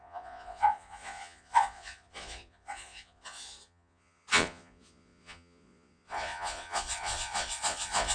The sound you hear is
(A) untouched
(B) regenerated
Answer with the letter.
B